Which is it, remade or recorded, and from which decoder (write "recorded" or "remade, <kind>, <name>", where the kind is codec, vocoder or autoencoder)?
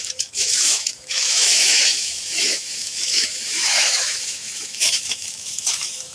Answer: remade, autoencoder, DAC-VAE